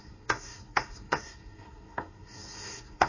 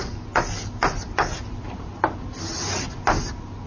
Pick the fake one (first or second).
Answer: first